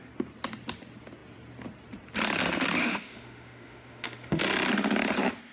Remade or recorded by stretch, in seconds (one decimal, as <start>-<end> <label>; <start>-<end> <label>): 0.0-2.8 recorded; 2.8-4.4 remade; 4.4-5.5 recorded

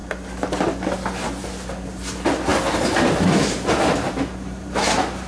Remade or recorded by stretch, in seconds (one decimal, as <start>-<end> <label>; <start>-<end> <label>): 0.0-2.5 recorded; 2.5-5.3 remade

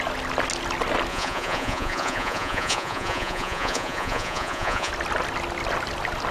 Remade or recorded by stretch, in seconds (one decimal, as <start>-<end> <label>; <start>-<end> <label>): 0.0-1.1 recorded; 1.1-4.9 remade; 4.9-6.3 recorded

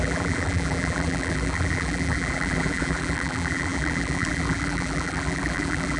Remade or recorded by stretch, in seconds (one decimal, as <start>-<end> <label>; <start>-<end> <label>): 0.0-6.0 remade

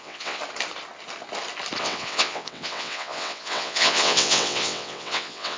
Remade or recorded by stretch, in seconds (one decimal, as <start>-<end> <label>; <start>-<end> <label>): 0.0-0.4 remade; 0.4-1.8 recorded; 1.8-5.6 remade

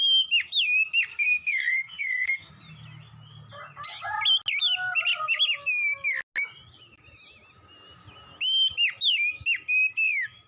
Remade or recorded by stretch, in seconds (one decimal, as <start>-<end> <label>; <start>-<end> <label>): 0.0-1.1 recorded; 1.1-2.5 remade; 2.5-10.5 recorded